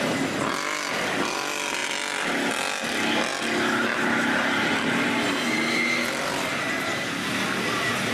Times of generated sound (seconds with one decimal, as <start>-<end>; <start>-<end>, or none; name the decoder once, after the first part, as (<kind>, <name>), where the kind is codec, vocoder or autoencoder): none

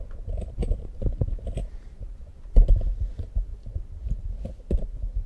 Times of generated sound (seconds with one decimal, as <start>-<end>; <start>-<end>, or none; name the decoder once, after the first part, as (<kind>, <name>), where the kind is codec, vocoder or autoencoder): 0.6-2.2 (vocoder, BigVGAN v2)

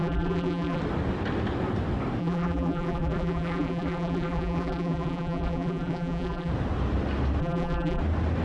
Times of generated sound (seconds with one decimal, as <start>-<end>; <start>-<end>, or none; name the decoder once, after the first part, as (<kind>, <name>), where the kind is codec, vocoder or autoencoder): 0.0-0.8 (vocoder, BigVGAN v2); 2.2-6.5; 7.4-8.0

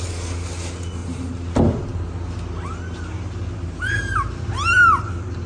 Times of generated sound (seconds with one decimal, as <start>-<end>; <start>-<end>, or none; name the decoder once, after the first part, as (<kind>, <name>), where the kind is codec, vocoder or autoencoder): 1.0-1.5 (vocoder, BigVGAN v2)

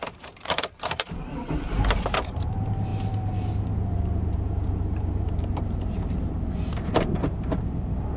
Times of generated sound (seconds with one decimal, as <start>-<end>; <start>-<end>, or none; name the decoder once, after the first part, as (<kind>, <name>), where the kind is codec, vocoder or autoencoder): 0.0-8.2 (vocoder, BigVGAN v2)

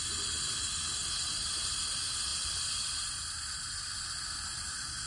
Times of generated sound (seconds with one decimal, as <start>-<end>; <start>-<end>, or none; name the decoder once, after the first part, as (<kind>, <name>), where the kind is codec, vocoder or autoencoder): none

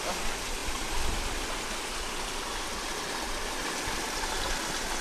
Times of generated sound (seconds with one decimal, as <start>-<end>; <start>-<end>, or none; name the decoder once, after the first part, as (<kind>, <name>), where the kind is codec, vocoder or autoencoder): 3.6-4.5 (vocoder, BigVGAN v2)

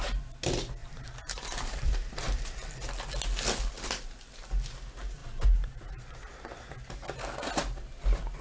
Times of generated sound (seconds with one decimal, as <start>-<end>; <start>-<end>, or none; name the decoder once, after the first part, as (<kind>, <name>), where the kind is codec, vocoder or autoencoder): 0.8-2.9 (vocoder, BigVGAN v2); 5.2-6.6